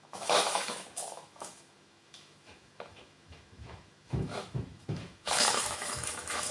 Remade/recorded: remade